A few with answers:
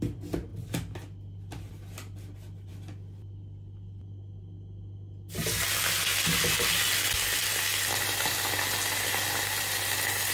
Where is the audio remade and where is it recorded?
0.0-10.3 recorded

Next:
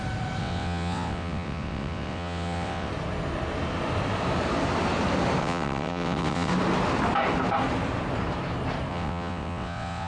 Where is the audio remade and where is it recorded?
0.0-0.4 recorded; 0.4-2.9 remade; 2.9-5.4 recorded; 5.4-6.5 remade; 6.5-8.9 recorded; 8.9-10.1 remade

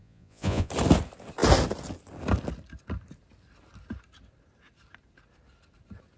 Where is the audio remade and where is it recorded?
0.0-0.7 remade; 0.7-6.2 recorded

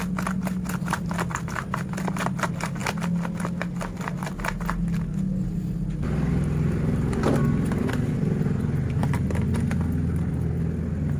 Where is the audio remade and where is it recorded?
0.0-11.2 recorded

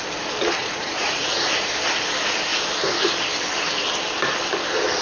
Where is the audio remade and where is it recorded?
0.0-0.6 recorded; 0.6-1.7 remade; 1.7-5.0 recorded